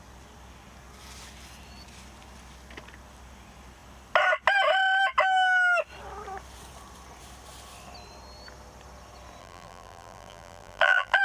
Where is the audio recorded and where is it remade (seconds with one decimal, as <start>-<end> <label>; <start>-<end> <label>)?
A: 0.0-9.4 recorded; 9.4-11.2 remade